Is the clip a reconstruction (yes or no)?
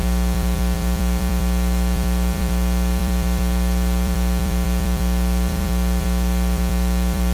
yes